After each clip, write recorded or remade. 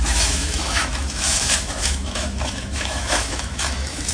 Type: remade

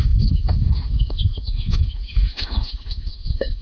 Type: remade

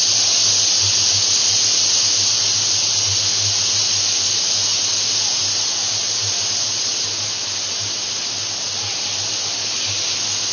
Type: recorded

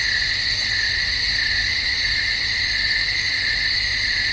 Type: recorded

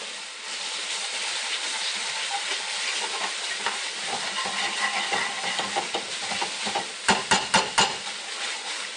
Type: recorded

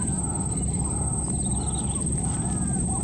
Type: recorded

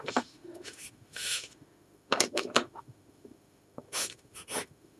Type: remade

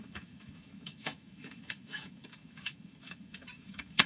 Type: remade